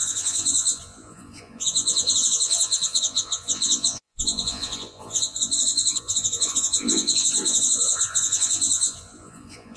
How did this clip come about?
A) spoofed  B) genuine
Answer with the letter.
A